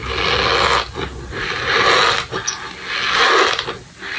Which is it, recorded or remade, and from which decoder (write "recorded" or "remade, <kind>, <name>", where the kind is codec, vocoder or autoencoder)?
recorded